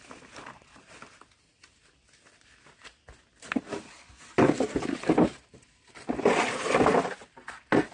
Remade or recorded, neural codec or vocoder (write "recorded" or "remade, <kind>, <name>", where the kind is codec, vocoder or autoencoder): recorded